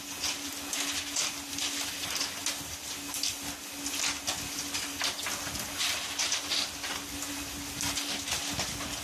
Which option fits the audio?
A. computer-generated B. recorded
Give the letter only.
B